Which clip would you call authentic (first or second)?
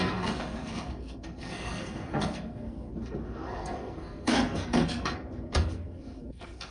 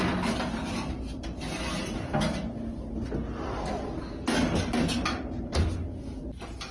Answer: second